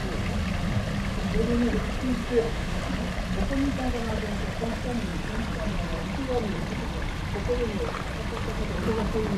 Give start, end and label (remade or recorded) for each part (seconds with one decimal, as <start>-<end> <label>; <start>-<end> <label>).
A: 0.0-2.2 recorded; 2.2-2.8 remade; 2.8-9.4 recorded